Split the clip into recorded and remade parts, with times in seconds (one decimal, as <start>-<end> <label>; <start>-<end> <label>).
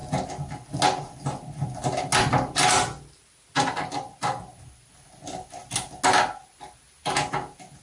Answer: 0.0-7.8 recorded